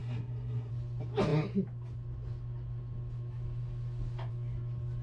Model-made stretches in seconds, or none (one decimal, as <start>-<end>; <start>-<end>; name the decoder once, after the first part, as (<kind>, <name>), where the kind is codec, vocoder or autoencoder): 0.0-0.7 (codec, SNAC)